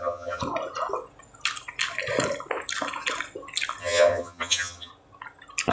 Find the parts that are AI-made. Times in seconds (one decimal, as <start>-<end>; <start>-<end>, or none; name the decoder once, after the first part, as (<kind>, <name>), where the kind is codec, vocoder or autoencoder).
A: 0.0-0.4 (vocoder, HiFi-GAN); 3.8-4.9